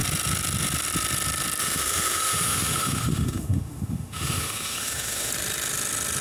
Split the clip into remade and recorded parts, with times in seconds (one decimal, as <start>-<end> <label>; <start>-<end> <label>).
0.0-1.6 recorded; 1.6-5.3 remade; 5.3-6.2 recorded